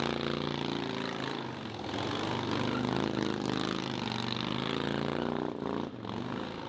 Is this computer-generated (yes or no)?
no